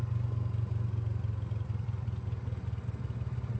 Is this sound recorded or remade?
recorded